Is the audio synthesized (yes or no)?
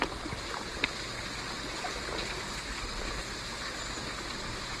no